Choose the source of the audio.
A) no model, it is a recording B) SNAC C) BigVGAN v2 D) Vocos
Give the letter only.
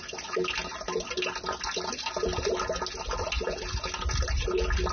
A